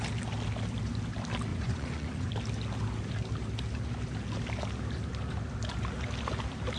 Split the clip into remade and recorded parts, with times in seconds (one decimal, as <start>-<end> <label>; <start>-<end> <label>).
0.0-1.5 recorded; 1.5-2.3 remade; 2.3-6.8 recorded